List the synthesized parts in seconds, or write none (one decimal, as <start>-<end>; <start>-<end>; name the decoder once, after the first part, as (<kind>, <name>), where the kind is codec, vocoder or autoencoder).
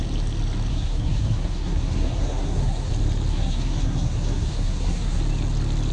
0.7-2.9 (codec, SNAC); 3.3-5.2